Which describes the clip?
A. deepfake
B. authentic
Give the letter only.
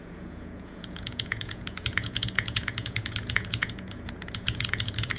A